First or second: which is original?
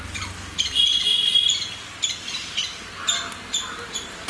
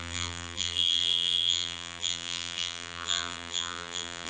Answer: first